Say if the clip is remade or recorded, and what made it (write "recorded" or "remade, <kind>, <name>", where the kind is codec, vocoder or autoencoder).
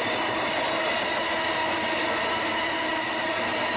recorded